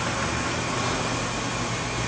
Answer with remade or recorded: recorded